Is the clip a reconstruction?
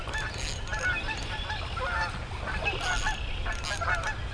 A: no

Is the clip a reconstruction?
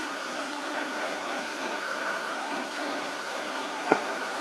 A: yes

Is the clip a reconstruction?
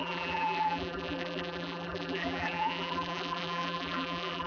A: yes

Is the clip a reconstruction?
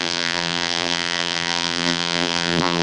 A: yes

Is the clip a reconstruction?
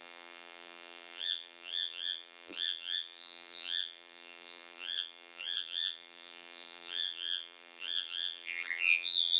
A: yes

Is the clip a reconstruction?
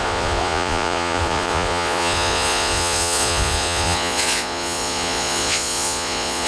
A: yes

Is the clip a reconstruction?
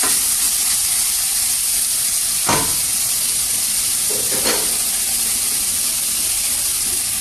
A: no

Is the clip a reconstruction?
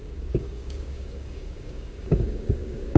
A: yes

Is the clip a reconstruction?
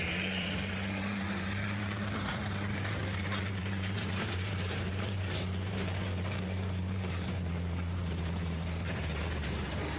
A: yes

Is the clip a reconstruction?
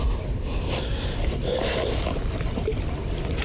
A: yes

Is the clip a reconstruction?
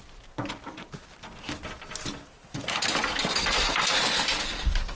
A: no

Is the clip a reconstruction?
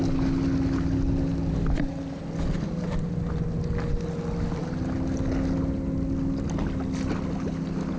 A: no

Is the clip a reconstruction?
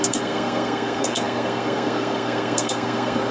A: yes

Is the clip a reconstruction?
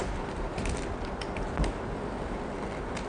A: no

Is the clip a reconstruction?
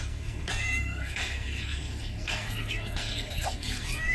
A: yes